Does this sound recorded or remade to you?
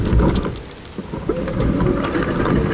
recorded